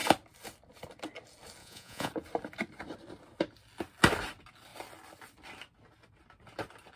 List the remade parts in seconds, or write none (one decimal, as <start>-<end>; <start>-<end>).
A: 1.6-2.1